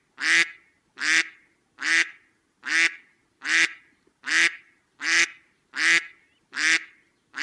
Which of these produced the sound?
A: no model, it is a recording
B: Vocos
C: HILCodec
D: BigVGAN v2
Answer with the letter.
A